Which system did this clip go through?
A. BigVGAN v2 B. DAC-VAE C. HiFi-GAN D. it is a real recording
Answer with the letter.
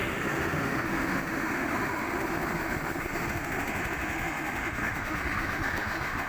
B